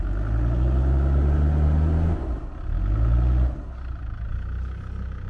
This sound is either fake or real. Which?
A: real